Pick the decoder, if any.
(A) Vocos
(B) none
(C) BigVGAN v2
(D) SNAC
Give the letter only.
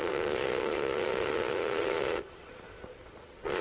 A